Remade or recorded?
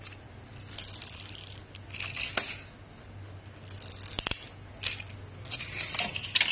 recorded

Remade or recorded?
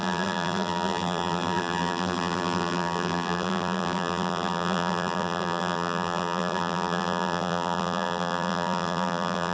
remade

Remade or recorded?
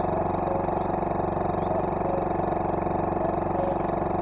recorded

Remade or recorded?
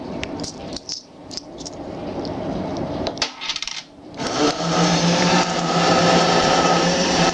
remade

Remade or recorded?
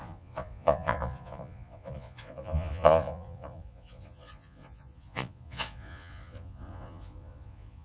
remade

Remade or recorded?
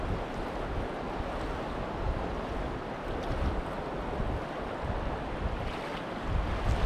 recorded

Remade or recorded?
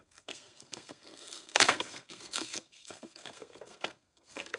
remade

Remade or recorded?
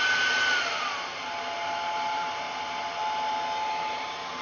recorded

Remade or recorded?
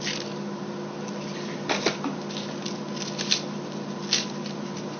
recorded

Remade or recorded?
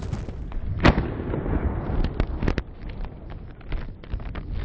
recorded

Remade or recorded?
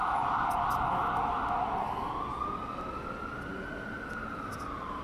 recorded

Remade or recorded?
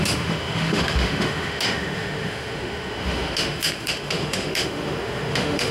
remade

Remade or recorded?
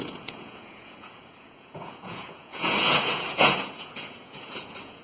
remade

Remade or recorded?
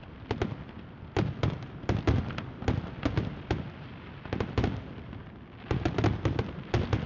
recorded